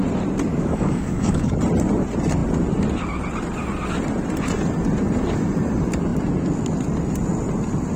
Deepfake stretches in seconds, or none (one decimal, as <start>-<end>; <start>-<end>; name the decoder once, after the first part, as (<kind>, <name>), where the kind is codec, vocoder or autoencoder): 0.5-1.6 (codec, DAC)